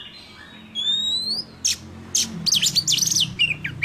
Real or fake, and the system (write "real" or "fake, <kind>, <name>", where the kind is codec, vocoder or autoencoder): real